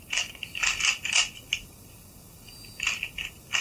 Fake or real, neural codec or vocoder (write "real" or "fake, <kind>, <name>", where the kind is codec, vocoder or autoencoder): real